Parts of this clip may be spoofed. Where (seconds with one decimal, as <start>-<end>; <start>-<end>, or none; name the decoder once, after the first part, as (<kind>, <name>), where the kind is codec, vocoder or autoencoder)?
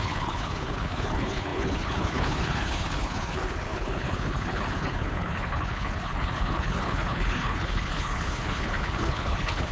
0.0-9.7 (codec, HILCodec)